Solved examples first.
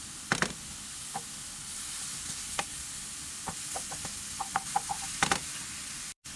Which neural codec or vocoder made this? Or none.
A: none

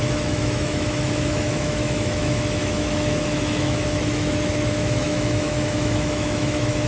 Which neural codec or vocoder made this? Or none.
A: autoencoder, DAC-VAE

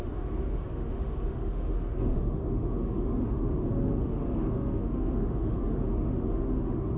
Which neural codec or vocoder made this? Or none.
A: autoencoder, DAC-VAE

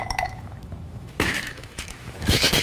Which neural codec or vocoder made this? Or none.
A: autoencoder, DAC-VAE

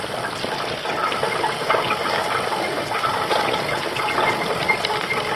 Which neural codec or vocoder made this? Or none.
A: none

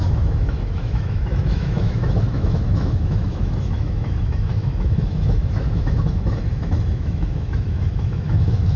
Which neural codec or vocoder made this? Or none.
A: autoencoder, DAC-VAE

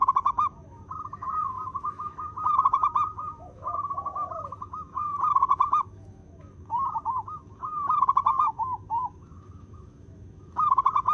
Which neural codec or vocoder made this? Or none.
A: autoencoder, DAC-VAE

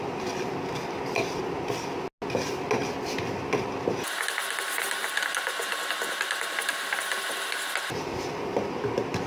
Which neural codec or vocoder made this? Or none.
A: none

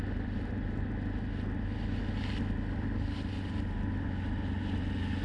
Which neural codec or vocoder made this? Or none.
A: none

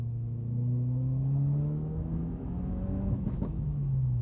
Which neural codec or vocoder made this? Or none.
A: autoencoder, DAC-VAE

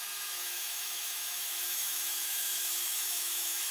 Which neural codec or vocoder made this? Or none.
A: autoencoder, DAC-VAE